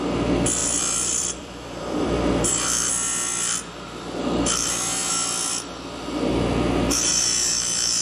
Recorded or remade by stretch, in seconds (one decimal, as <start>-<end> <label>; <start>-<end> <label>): 0.0-0.6 recorded; 0.6-2.9 remade; 2.9-8.0 recorded